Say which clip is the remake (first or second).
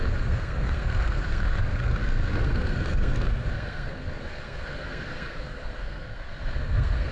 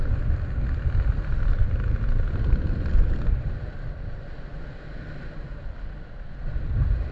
first